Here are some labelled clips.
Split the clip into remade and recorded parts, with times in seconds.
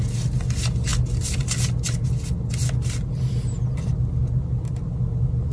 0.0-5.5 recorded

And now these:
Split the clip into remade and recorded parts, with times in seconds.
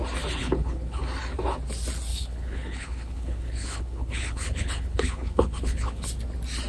0.0-0.4 recorded; 0.4-1.0 remade; 1.0-2.1 recorded; 2.1-6.1 remade; 6.1-6.7 recorded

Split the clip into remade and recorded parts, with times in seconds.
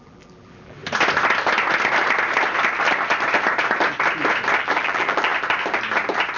0.0-0.8 remade; 0.8-4.6 recorded; 4.6-5.3 remade; 5.3-6.4 recorded